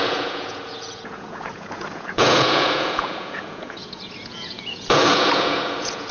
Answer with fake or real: fake